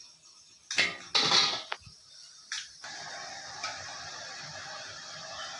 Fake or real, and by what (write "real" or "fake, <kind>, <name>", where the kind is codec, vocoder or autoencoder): real